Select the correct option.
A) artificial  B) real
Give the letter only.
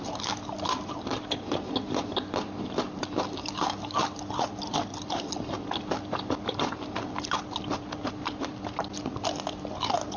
B